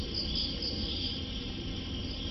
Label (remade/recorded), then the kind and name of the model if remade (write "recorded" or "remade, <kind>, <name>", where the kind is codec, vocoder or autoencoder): recorded